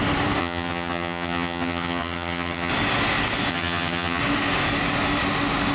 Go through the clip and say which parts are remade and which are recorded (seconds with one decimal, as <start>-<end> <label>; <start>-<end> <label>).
0.0-0.4 recorded; 0.4-2.7 remade; 2.7-3.5 recorded; 3.5-4.2 remade; 4.2-5.7 recorded